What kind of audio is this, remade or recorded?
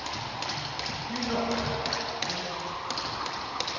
recorded